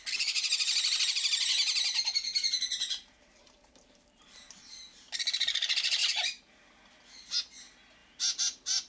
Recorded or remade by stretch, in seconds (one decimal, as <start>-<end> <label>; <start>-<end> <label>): 0.0-2.3 recorded; 2.3-4.6 remade; 4.6-6.0 recorded; 6.0-6.6 remade; 6.6-8.0 recorded; 8.0-8.9 remade

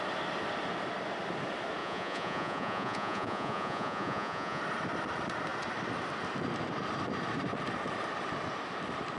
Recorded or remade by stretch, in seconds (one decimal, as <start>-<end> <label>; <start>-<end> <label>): 0.0-1.8 recorded; 1.8-4.6 remade; 4.6-9.2 recorded

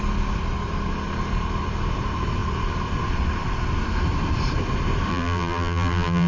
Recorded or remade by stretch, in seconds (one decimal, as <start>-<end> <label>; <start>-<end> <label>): 0.0-5.1 recorded; 5.1-6.3 remade

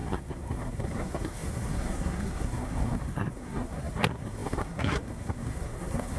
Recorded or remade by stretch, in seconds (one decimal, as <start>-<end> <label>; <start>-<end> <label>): 0.0-6.2 remade

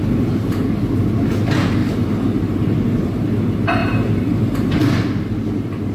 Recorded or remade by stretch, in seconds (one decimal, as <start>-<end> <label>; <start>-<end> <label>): 0.0-1.8 recorded; 1.8-3.4 remade; 3.4-3.8 recorded; 3.8-4.9 remade; 4.9-5.9 recorded

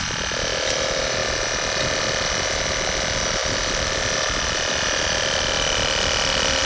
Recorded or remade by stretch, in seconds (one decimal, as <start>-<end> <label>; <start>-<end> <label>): 0.0-6.6 recorded

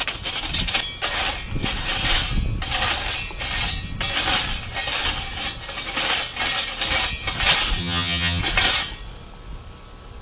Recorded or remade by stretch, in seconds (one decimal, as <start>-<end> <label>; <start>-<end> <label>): 0.0-7.8 recorded; 7.8-8.4 remade; 8.4-10.2 recorded